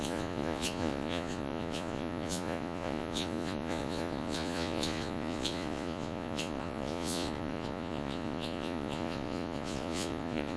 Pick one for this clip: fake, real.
fake